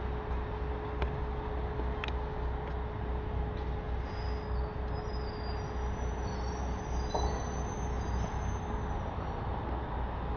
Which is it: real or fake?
real